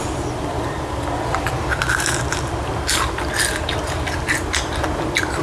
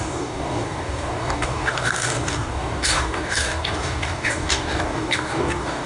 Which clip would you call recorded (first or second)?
first